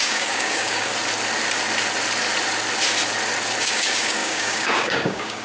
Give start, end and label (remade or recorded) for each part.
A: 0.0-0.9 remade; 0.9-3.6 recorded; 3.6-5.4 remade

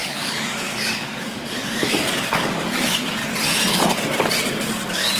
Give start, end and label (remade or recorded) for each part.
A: 0.0-3.2 remade; 3.2-4.5 recorded; 4.5-5.2 remade